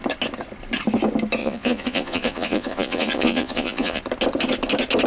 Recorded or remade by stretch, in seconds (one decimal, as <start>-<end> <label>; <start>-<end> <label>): 0.0-1.4 recorded; 1.4-4.0 remade; 4.0-5.1 recorded